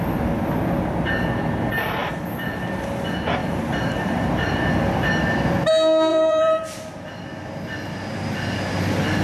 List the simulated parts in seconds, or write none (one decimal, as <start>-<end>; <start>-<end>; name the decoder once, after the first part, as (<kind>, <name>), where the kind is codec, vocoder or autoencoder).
2.0-2.6 (vocoder, BigVGAN v2); 3.4-4.9; 6.1-7.1